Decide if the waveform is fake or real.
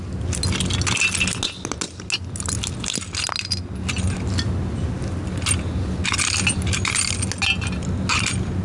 real